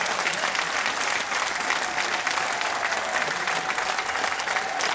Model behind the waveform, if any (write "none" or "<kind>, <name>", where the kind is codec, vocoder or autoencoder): none